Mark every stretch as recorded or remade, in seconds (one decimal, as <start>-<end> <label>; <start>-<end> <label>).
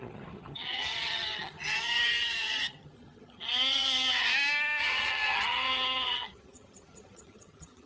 0.0-4.3 remade; 4.3-4.8 recorded; 4.8-7.9 remade